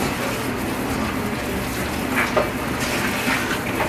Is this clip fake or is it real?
real